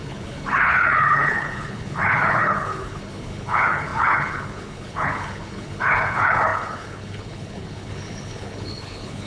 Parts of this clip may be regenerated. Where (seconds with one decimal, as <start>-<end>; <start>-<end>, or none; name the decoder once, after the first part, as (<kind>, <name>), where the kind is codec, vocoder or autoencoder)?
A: 0.0-9.3 (codec, HILCodec)